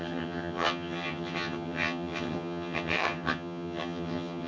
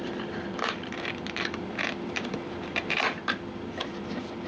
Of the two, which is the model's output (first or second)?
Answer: first